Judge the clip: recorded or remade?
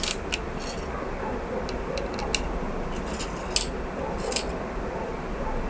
recorded